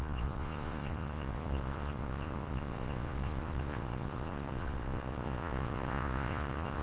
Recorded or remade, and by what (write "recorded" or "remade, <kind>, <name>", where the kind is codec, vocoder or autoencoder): remade, vocoder, Vocos